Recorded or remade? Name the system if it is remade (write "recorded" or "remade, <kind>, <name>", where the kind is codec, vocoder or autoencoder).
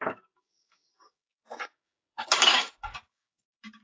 remade, codec, DAC